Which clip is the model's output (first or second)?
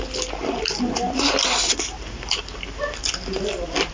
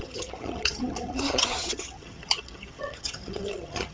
second